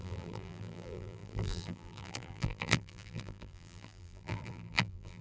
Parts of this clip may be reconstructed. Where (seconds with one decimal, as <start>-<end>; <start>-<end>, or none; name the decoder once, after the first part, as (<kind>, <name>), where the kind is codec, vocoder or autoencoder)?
0.0-5.2 (vocoder, BigVGAN v2)